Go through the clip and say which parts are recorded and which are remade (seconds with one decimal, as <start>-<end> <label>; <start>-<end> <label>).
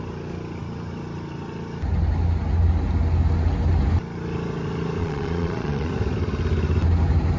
0.0-5.0 recorded; 5.0-5.9 remade; 5.9-7.4 recorded